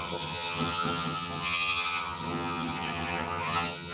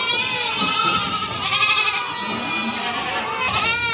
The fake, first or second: first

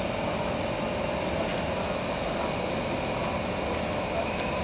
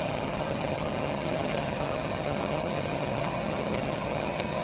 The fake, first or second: second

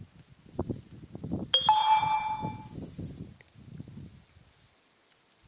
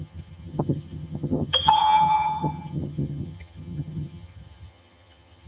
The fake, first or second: second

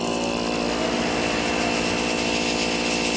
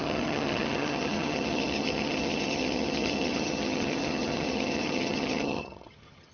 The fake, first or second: second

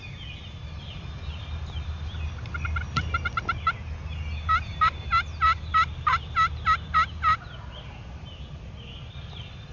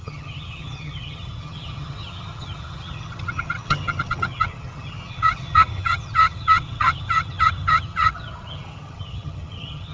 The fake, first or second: second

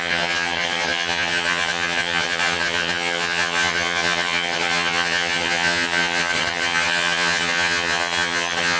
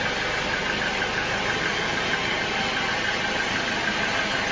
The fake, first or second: first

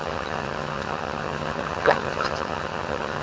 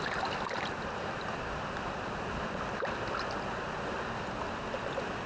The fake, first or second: first